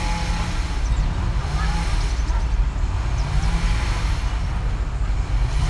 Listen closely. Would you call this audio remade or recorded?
recorded